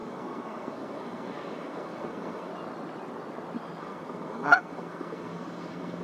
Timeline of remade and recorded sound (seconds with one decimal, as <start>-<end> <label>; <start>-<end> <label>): 0.0-2.5 remade; 2.5-3.8 recorded; 3.8-6.0 remade